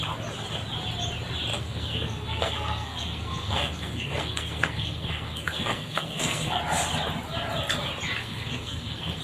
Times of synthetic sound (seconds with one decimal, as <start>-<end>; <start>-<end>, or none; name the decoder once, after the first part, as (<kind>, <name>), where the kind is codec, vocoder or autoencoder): 1.5-6.6 (codec, SNAC); 8.2-9.2